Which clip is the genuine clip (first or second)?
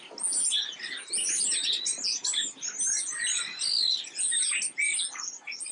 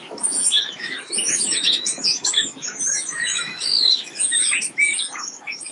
first